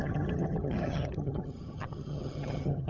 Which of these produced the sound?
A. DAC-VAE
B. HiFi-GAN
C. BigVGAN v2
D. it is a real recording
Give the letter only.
B